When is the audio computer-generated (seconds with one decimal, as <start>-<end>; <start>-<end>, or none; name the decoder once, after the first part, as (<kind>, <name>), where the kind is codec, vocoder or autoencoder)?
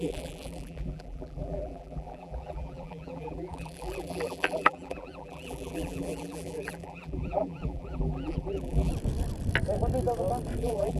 0.0-8.9 (vocoder, BigVGAN v2); 10.6-11.0